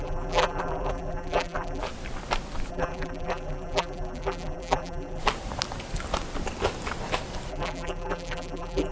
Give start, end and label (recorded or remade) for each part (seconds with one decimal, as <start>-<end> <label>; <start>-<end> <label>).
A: 0.0-1.8 remade; 1.8-2.7 recorded; 2.7-5.2 remade; 5.2-7.5 recorded; 7.5-8.9 remade